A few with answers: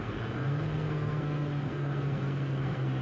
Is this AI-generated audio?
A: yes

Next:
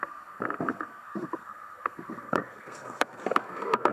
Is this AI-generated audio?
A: yes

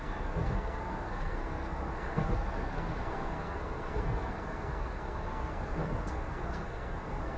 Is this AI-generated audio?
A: yes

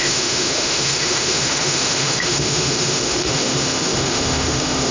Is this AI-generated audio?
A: yes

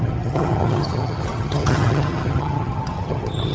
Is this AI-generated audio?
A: yes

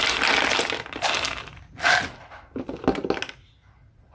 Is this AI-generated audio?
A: no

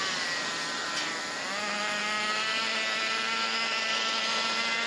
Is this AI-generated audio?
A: no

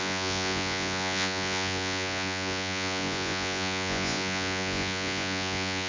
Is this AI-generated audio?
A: yes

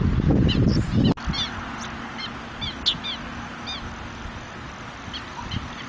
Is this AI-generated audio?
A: no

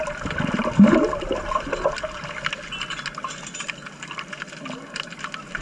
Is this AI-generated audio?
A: no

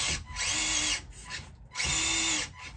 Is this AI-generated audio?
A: no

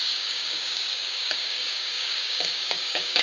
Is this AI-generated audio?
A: yes